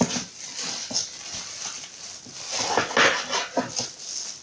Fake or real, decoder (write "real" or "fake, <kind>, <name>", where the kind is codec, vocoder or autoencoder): real